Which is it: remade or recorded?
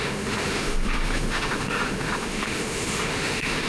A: remade